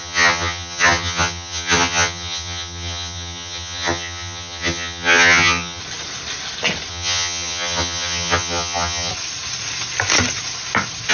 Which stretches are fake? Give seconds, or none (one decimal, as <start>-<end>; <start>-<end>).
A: 0.0-5.8; 6.9-9.1